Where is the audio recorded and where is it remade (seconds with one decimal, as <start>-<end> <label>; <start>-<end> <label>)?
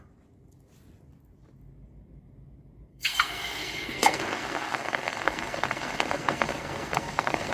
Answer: 0.0-2.9 recorded; 2.9-7.5 remade